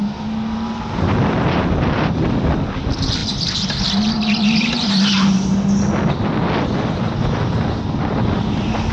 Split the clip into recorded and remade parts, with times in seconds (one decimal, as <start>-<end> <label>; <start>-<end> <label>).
0.0-8.9 recorded